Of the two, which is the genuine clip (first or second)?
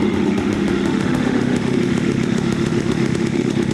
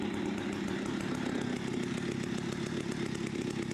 second